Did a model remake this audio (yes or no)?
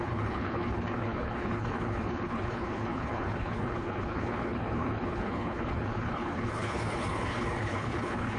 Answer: yes